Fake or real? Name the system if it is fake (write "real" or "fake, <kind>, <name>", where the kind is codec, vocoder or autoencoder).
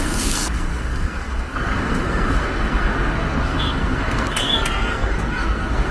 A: fake, codec, SNAC